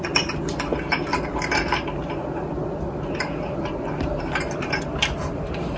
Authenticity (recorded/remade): recorded